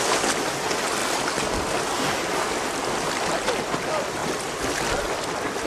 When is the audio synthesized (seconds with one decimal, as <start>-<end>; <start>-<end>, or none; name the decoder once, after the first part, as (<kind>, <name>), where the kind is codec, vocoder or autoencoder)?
1.0-1.8 (vocoder, BigVGAN v2); 4.2-4.9